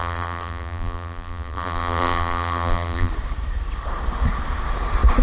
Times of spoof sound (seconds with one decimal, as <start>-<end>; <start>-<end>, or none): 0.0-3.1